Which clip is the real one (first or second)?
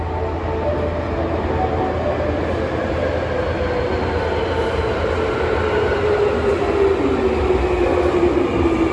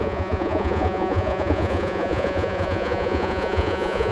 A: first